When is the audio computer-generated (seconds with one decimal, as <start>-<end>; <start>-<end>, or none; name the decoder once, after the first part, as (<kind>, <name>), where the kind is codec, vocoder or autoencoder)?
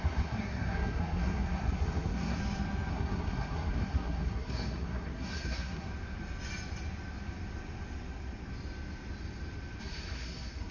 0.0-2.4 (codec, SNAC); 2.9-5.9; 9.8-10.7